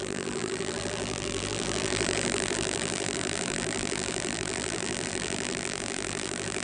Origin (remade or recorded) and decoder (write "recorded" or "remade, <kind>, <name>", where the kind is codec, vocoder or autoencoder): remade, vocoder, BigVGAN v2